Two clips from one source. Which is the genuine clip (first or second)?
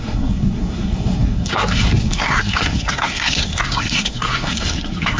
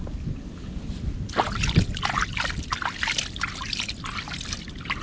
second